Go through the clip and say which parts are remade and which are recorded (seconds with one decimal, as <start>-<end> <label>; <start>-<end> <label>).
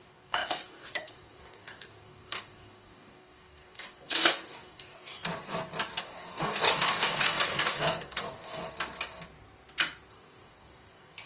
0.0-5.2 remade; 5.2-6.0 recorded; 6.0-8.6 remade; 8.6-10.1 recorded; 10.1-11.3 remade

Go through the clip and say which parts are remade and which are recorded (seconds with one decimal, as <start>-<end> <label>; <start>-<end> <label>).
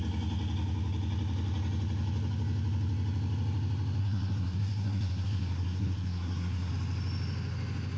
0.0-4.0 recorded; 4.0-6.7 remade; 6.7-8.0 recorded